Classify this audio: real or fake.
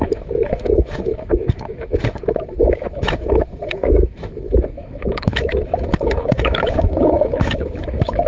fake